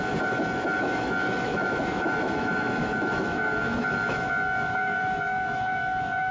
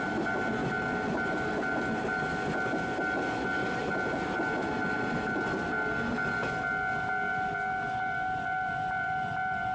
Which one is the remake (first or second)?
first